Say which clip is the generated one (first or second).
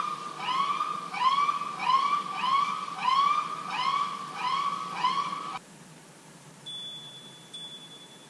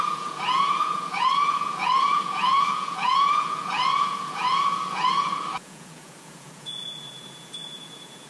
second